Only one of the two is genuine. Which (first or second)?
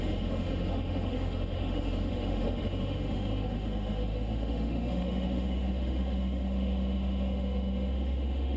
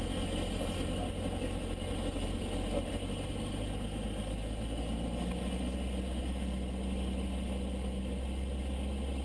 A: second